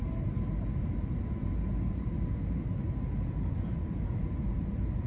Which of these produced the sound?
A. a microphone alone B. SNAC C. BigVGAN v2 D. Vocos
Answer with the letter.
A